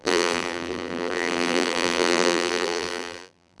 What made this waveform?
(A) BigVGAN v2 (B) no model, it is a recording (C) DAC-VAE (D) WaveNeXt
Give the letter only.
A